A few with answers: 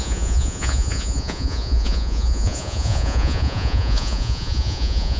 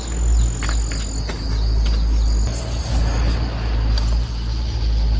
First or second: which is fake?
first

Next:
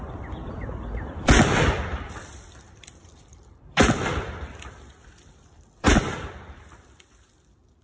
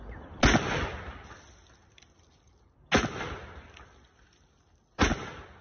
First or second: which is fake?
first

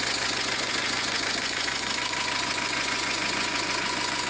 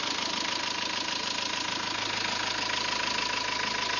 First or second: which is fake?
first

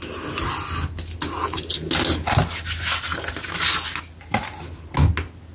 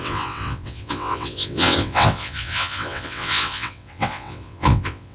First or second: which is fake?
second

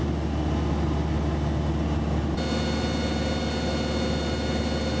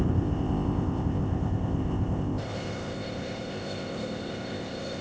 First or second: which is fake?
second